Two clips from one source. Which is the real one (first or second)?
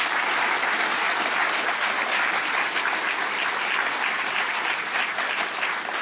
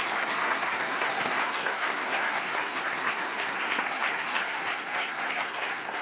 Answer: first